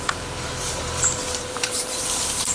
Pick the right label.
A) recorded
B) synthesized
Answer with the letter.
B